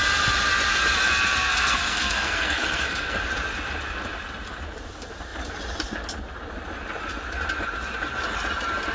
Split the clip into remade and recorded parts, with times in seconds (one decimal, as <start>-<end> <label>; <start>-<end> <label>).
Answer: 0.0-1.5 recorded; 1.5-3.2 remade; 3.2-8.9 recorded